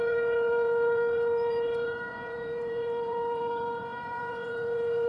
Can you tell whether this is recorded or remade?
remade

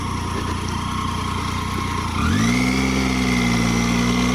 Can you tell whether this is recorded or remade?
recorded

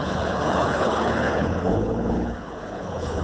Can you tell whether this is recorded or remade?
remade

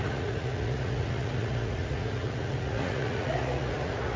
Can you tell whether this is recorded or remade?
remade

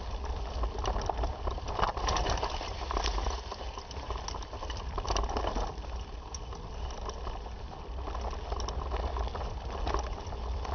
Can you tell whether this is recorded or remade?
recorded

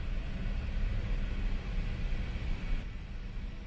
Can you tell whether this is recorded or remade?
recorded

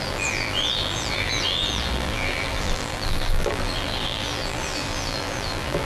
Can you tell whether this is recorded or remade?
remade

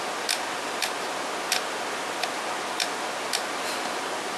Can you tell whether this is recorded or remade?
recorded